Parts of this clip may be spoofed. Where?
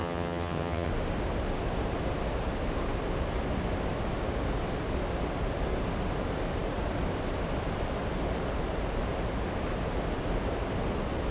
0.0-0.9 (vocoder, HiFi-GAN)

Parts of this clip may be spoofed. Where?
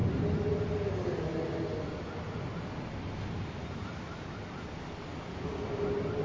none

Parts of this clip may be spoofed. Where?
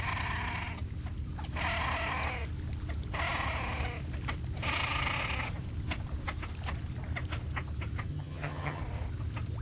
8.1-8.8 (vocoder, HiFi-GAN)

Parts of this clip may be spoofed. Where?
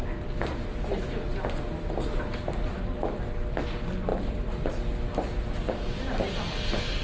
none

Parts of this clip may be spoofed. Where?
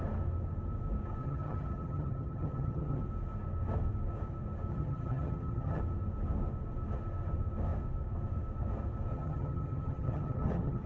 1.2-3.0 (vocoder, HiFi-GAN); 4.7-5.8; 9.1-10.9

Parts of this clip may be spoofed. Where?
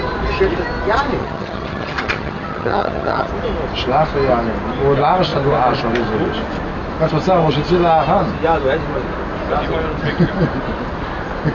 1.2-3.3 (vocoder, HiFi-GAN)